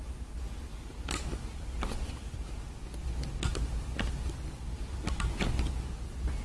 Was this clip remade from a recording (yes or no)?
no